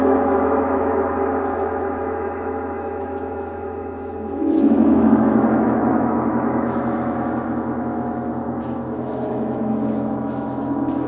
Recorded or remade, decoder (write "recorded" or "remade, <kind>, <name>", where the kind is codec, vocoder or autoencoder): remade, autoencoder, DAC-VAE